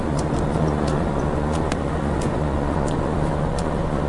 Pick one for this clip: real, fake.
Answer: fake